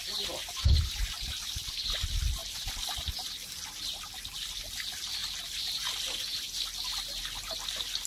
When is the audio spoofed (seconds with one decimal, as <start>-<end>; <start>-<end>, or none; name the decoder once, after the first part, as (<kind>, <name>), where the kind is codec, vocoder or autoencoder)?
0.4-1.5 (vocoder, BigVGAN v2); 5.2-6.5